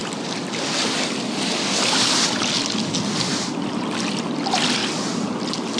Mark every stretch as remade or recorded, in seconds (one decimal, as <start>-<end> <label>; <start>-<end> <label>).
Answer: 0.0-5.8 recorded